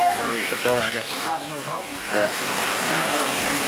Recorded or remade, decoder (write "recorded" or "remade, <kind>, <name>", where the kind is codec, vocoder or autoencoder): remade, codec, DAC